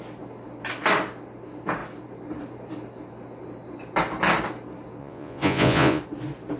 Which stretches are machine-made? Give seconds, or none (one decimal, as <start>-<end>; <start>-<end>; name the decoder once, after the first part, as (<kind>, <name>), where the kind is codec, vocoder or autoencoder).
5.0-6.0 (vocoder, Vocos)